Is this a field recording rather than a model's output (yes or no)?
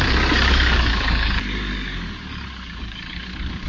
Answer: no